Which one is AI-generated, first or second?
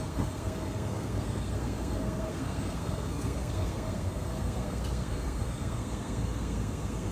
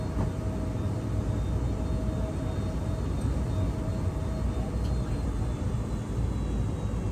first